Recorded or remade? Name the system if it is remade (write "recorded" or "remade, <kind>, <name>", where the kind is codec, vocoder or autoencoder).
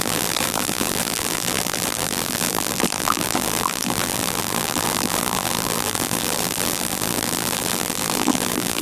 remade, vocoder, BigVGAN v2